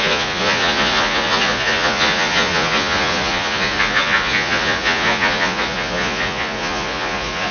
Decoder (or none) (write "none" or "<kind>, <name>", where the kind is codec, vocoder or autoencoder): vocoder, Vocos